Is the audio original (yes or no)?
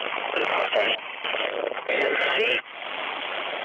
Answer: yes